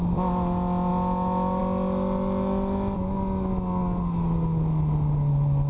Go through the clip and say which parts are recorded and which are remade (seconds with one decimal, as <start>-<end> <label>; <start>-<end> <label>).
0.0-5.7 recorded